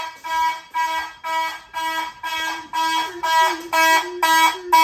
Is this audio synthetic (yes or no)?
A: no